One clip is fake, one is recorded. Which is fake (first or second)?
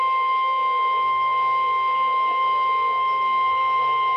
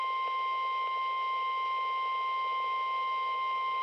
first